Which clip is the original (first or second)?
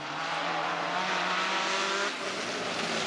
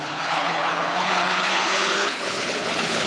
first